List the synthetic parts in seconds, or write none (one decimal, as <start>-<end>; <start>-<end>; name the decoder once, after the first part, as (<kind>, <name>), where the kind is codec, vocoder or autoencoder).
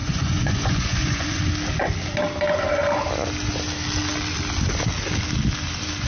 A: 0.0-1.4 (vocoder, Vocos)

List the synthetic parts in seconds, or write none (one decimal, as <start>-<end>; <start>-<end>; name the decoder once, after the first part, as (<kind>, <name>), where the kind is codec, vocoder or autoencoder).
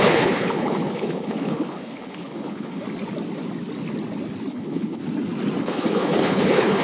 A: 0.0-2.8 (codec, HILCodec); 4.5-5.0; 5.6-6.8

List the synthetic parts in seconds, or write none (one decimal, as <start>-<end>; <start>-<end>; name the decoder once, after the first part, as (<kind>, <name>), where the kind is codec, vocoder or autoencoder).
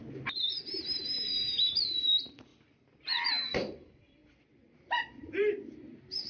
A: 0.8-2.5 (vocoder, BigVGAN v2); 3.3-6.3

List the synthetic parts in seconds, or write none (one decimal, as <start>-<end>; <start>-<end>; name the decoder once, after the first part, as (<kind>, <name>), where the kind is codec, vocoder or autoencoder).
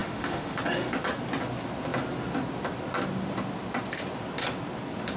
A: 0.0-0.6 (autoencoder, DAC-VAE)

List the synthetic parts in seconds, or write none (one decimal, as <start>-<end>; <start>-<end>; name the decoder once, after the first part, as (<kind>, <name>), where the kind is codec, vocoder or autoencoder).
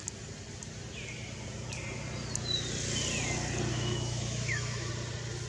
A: 3.7-4.9 (autoencoder, DAC-VAE)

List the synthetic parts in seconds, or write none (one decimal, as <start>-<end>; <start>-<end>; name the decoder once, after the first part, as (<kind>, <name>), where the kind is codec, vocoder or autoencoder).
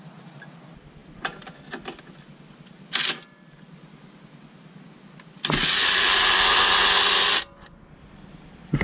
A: none